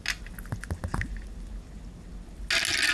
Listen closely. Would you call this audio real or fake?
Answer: real